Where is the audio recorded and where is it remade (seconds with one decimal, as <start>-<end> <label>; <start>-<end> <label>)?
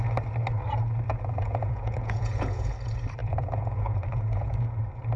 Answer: 0.0-1.1 recorded; 1.1-2.7 remade; 2.7-3.2 recorded; 3.2-4.8 remade; 4.8-5.2 recorded